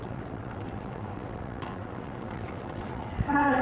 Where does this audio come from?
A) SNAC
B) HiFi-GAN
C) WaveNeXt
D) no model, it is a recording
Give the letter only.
C